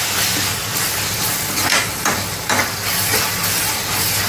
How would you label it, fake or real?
real